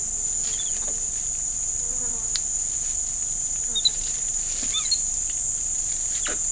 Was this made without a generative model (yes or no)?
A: yes